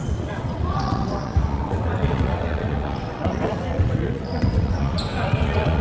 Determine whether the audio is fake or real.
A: fake